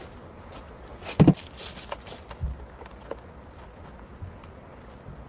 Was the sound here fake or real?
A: real